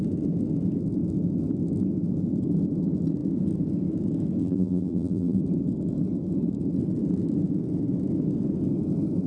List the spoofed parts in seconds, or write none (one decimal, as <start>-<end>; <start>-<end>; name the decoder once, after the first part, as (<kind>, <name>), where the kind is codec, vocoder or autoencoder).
4.4-5.4 (vocoder, BigVGAN v2)